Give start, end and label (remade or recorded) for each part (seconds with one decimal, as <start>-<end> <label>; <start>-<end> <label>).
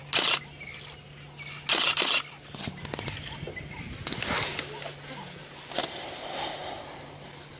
0.0-7.6 recorded